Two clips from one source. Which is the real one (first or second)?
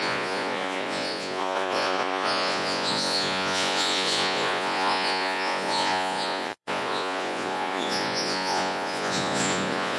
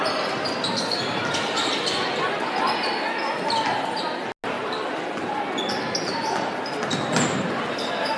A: second